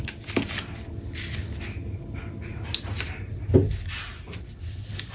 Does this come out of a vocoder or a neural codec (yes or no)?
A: no